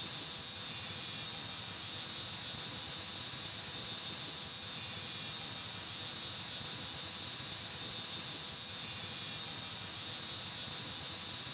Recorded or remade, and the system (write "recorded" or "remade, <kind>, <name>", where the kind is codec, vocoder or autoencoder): recorded